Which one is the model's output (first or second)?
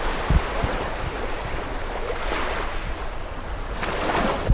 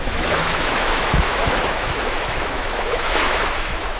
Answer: second